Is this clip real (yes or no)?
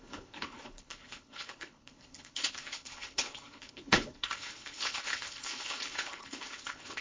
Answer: no